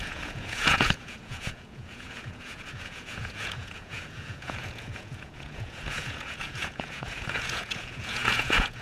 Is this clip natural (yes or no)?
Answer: no